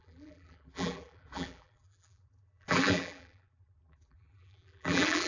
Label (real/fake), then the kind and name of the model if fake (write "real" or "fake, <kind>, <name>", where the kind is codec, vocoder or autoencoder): fake, vocoder, BigVGAN v2